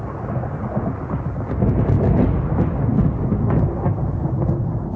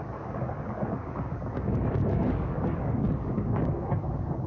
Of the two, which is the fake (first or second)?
second